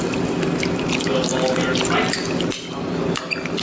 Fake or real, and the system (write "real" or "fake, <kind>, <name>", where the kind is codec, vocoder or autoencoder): real